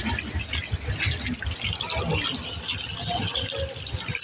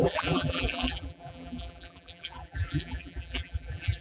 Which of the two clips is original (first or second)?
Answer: first